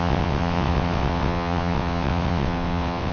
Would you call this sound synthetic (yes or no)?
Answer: yes